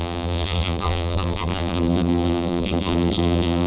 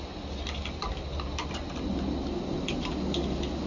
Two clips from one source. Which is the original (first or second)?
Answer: second